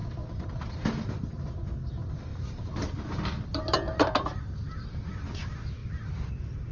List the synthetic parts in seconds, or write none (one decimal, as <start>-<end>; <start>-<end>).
0.0-0.5; 5.8-6.3

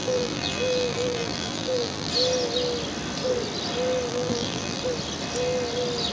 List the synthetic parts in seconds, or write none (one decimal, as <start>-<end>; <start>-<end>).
0.0-2.1; 4.1-4.8

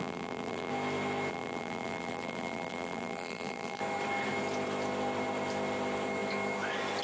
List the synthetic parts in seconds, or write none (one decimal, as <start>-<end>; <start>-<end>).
0.0-0.7; 1.3-3.8

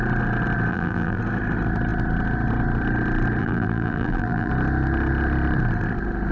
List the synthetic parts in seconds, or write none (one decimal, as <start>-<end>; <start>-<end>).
0.7-1.2; 3.4-4.5

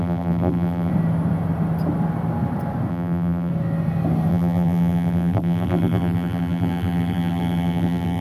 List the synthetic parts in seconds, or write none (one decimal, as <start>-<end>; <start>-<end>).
0.0-0.9; 2.9-3.5; 4.3-8.2

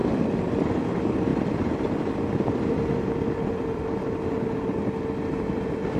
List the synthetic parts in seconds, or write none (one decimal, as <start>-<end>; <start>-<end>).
0.0-0.8; 1.3-3.8

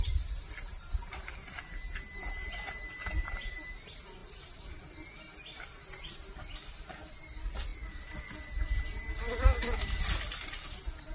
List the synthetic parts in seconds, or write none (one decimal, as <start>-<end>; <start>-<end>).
none

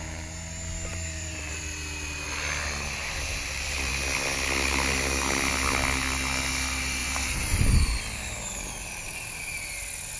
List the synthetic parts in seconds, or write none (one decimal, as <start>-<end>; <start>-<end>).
0.9-1.6; 3.0-3.9; 7.0-7.6